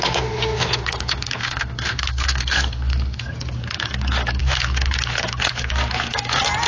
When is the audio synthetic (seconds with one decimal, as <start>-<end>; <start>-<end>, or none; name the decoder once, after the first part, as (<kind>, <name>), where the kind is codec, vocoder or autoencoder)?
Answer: 1.4-3.3 (codec, SNAC)